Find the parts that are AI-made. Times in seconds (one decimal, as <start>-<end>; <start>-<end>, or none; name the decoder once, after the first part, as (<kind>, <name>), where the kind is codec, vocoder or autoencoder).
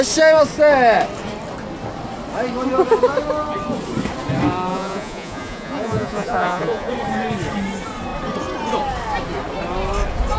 4.7-6.9 (vocoder, Vocos)